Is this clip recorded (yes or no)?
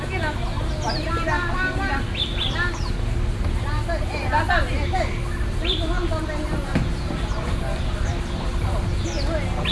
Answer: yes